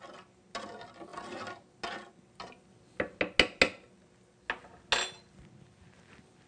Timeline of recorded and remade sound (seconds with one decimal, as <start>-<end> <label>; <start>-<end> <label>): 0.0-6.5 recorded